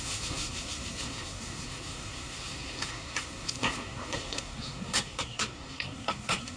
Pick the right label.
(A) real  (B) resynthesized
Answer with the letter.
B